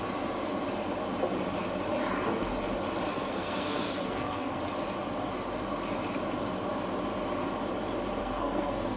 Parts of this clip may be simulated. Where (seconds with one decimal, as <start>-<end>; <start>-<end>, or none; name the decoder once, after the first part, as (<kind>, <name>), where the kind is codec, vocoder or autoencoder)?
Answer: 3.1-4.6 (codec, SNAC); 8.2-9.0